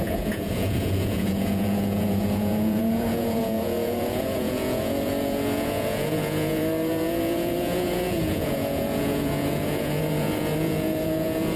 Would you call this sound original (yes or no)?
no